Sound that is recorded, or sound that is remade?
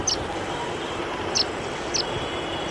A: recorded